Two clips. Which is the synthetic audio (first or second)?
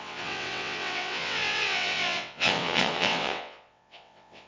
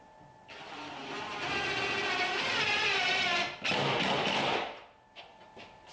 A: first